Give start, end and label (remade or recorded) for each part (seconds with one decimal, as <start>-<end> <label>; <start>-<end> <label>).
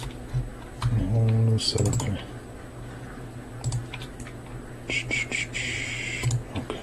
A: 0.0-6.8 recorded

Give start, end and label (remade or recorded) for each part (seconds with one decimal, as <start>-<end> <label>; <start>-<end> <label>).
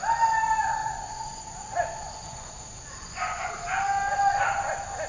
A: 0.0-0.8 recorded; 0.8-3.5 remade; 3.5-5.1 recorded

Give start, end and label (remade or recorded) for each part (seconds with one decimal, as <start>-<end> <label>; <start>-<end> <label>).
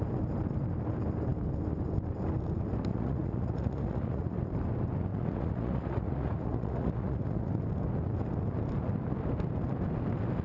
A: 0.0-2.9 recorded; 2.9-4.4 remade; 4.4-5.1 recorded; 5.1-7.5 remade; 7.5-10.4 recorded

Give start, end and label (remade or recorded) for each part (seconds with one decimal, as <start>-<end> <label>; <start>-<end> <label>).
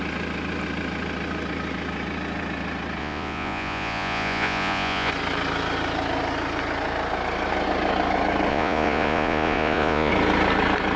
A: 0.0-3.0 recorded; 3.0-5.1 remade; 5.1-8.5 recorded; 8.5-10.1 remade; 10.1-11.0 recorded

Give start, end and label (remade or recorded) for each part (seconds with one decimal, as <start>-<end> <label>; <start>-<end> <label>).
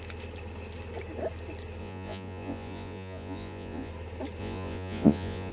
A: 0.0-1.8 recorded; 1.8-3.9 remade; 3.9-4.4 recorded; 4.4-5.5 remade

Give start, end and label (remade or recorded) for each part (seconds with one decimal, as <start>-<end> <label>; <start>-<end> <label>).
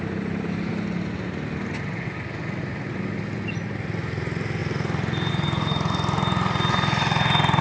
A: 0.0-7.6 recorded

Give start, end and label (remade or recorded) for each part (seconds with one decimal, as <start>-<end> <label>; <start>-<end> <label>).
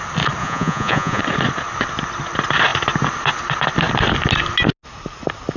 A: 0.0-0.4 recorded; 0.4-1.2 remade; 1.2-5.6 recorded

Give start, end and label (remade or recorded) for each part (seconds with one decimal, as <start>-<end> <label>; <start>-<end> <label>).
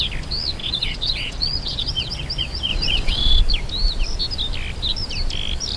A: 0.0-0.6 recorded; 0.6-2.2 remade; 2.2-2.7 recorded; 2.7-3.4 remade; 3.4-5.8 recorded